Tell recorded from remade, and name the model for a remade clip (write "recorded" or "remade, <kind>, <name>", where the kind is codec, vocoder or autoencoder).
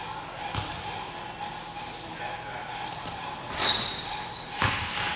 recorded